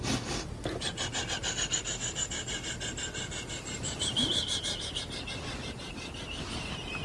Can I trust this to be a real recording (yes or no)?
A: yes